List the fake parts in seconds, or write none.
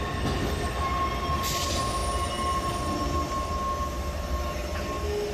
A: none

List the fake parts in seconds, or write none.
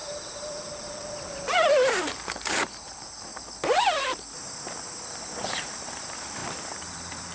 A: 0.0-3.3 (vocoder, BigVGAN v2); 5.5-7.3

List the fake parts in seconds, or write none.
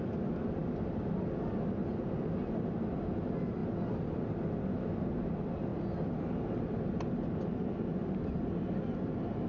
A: none